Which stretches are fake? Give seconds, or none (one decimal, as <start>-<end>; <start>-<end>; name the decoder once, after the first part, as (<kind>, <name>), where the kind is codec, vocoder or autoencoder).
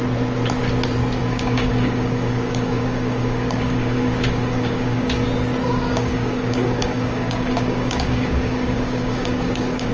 1.2-5.3 (codec, DAC); 5.7-9.9